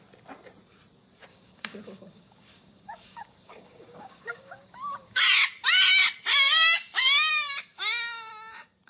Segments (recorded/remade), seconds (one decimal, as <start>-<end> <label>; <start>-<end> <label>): 0.0-1.3 recorded; 1.3-5.2 remade; 5.2-6.3 recorded; 6.3-7.3 remade; 7.3-7.7 recorded; 7.7-8.3 remade; 8.3-8.9 recorded